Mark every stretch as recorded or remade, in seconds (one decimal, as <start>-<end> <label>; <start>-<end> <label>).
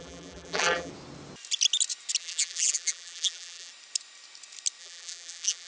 0.0-0.9 remade; 0.9-2.2 recorded; 2.2-3.7 remade; 3.7-4.8 recorded; 4.8-5.7 remade